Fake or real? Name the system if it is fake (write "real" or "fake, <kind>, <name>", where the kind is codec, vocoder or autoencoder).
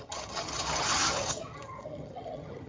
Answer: fake, vocoder, HiFi-GAN